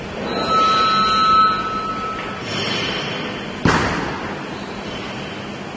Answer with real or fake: real